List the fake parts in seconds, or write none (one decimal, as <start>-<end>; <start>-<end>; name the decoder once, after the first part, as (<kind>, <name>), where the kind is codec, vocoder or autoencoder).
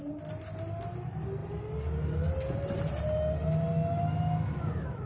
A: none